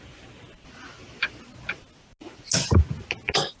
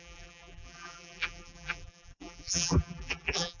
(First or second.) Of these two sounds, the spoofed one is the second